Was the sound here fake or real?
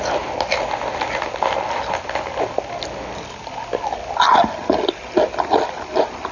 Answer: real